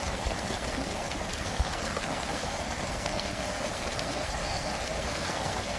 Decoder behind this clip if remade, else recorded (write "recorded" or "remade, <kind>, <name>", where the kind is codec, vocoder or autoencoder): remade, codec, SNAC